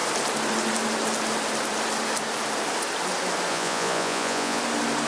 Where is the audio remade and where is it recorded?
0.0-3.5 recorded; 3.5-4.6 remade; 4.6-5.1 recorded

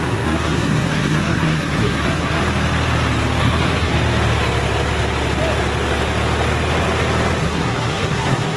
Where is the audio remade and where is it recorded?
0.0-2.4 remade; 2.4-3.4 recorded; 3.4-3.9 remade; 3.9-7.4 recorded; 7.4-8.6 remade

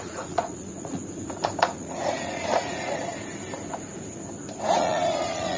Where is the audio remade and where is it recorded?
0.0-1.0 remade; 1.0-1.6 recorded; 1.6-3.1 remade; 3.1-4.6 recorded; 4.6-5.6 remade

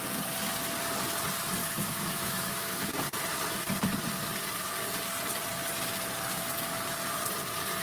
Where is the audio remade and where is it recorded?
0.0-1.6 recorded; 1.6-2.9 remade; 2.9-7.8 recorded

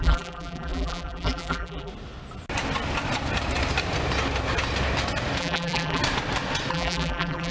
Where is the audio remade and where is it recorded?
0.0-1.9 remade; 1.9-5.4 recorded; 5.4-6.0 remade; 6.0-6.7 recorded; 6.7-7.5 remade

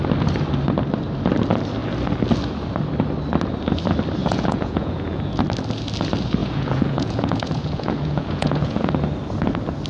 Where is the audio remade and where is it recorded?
0.0-4.2 recorded; 4.2-5.4 remade; 5.4-6.4 recorded; 6.4-8.9 remade; 8.9-9.9 recorded